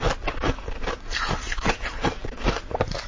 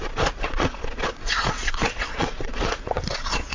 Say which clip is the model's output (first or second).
second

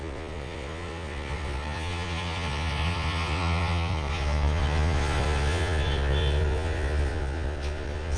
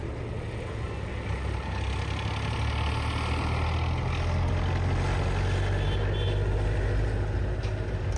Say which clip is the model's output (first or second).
first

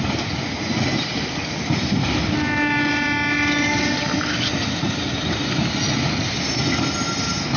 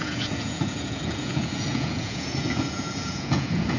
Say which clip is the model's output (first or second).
second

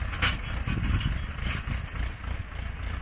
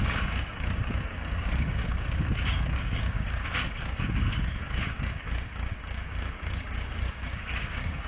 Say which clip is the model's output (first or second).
second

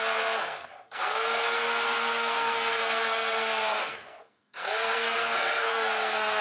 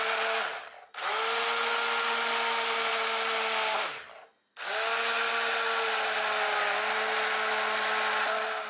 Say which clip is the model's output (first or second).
first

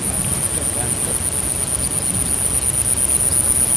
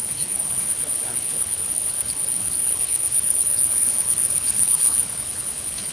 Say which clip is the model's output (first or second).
second